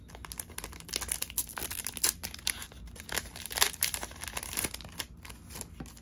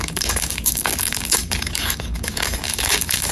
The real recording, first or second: first